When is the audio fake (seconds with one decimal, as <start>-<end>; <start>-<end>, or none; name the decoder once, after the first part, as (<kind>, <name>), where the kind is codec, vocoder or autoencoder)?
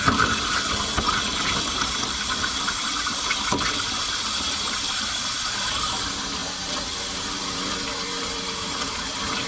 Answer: 0.0-9.5 (vocoder, BigVGAN v2)